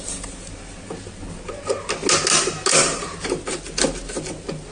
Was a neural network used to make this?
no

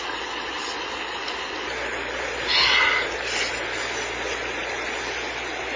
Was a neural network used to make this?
no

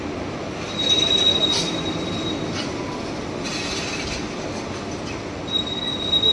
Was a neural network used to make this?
no